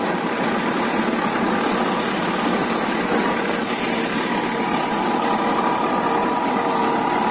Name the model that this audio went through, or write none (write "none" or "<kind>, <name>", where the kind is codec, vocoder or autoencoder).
none